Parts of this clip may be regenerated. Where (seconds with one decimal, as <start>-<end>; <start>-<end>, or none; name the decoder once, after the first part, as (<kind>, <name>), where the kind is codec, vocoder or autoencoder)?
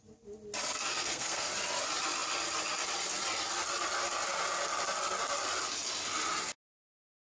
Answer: 0.9-1.5 (codec, SNAC)